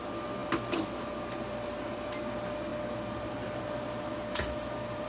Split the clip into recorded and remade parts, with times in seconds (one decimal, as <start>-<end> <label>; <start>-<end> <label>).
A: 0.0-5.1 recorded